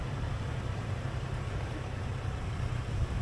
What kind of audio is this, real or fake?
fake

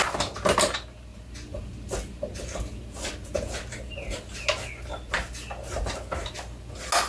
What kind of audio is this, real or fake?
real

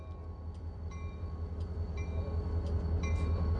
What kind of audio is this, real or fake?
fake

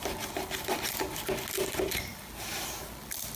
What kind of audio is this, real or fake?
real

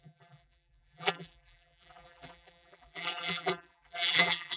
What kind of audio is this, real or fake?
fake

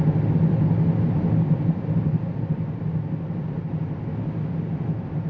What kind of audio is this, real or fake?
real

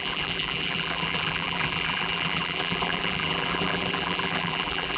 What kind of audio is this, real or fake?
fake